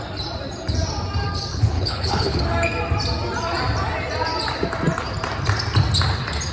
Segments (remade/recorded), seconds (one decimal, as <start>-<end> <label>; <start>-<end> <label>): 0.0-1.5 recorded; 1.5-2.4 remade; 2.4-6.5 recorded